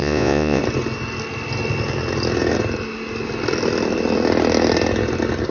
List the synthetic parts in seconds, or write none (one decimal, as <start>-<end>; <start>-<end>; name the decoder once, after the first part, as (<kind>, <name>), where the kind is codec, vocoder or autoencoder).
0.0-0.6 (vocoder, Vocos)